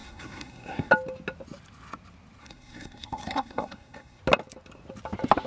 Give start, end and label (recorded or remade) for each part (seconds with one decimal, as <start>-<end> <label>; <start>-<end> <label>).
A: 0.0-0.9 remade; 0.9-2.4 recorded; 2.4-4.2 remade; 4.2-5.5 recorded